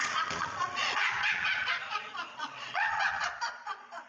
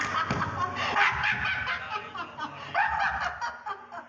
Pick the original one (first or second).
second